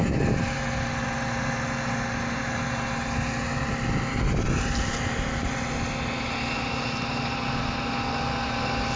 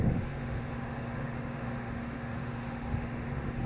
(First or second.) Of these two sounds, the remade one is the second